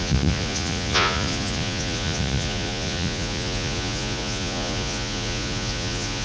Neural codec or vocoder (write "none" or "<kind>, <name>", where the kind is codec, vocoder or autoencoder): vocoder, Vocos